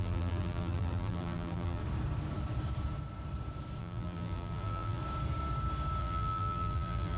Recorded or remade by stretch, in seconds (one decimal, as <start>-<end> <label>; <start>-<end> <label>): 0.0-1.8 remade; 1.8-3.8 recorded; 3.8-5.0 remade; 5.0-6.0 recorded; 6.0-7.2 remade